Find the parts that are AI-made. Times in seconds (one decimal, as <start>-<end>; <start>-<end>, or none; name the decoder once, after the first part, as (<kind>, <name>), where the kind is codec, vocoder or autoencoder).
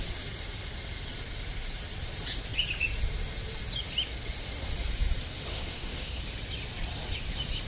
5.5-6.2 (codec, SNAC)